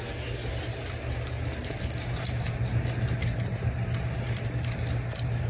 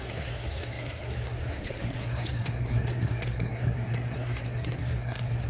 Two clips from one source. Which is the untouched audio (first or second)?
first